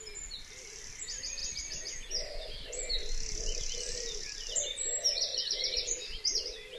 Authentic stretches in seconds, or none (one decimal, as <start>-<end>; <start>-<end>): 0.0-5.3